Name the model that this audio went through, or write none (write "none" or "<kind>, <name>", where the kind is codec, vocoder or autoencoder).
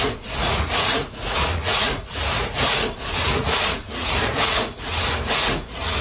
vocoder, Vocos